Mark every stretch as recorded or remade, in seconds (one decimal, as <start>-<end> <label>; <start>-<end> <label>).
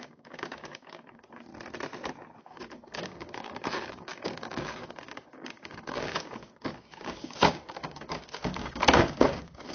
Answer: 0.0-1.5 remade; 1.5-2.4 recorded; 2.4-9.7 remade